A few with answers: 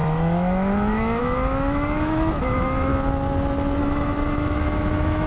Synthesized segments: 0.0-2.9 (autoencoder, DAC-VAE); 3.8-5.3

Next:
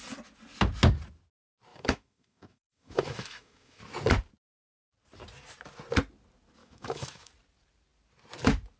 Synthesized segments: 1.7-3.8 (autoencoder, DAC-VAE); 6.6-7.3

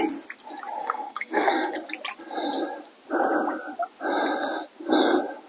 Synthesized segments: 0.8-1.7 (codec, SNAC)

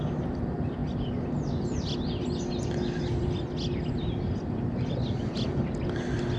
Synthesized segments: none

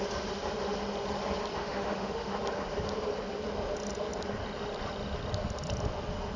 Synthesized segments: 1.6-2.3 (autoencoder, DAC-VAE)

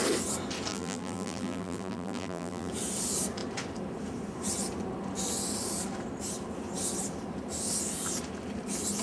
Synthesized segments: 0.7-2.7 (vocoder, BigVGAN v2)